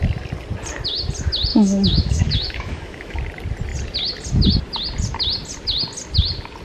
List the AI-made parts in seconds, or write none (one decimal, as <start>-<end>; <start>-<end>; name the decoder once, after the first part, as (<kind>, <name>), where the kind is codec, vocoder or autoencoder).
1.5-3.2 (autoencoder, DAC-VAE)